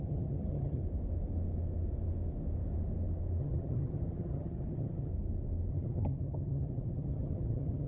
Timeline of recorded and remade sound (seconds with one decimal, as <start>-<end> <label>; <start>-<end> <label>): 0.0-0.8 remade; 0.8-3.4 recorded; 3.4-5.1 remade; 5.1-5.7 recorded; 5.7-7.9 remade